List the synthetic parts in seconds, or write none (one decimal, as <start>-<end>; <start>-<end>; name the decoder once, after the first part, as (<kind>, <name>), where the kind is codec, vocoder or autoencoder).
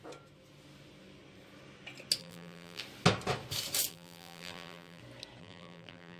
2.2-2.8 (vocoder, BigVGAN v2); 3.9-5.0; 5.4-6.2